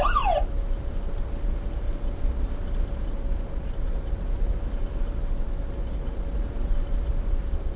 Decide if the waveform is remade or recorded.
recorded